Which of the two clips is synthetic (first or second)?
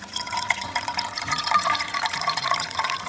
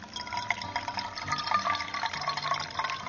first